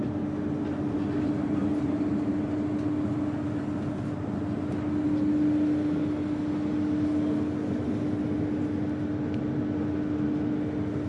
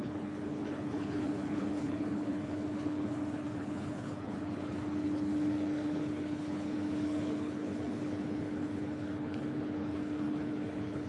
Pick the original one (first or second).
first